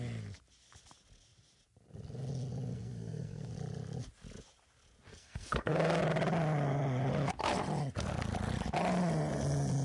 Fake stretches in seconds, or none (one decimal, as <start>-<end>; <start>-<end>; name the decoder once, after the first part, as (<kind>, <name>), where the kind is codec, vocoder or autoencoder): 2.7-3.5 (codec, SNAC); 5.1-6.0